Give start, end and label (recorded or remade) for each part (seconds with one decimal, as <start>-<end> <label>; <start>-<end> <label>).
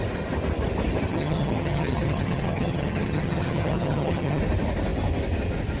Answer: 0.0-1.1 recorded; 1.1-4.4 remade; 4.4-5.8 recorded